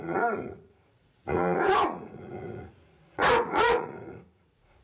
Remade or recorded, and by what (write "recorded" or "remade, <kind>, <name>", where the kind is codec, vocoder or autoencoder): remade, vocoder, Vocos